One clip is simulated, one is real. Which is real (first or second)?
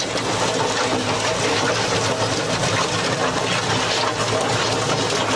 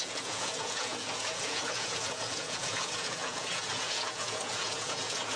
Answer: first